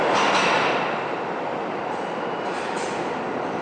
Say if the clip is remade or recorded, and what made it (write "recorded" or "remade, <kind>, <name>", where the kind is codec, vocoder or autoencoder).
remade, vocoder, BigVGAN v2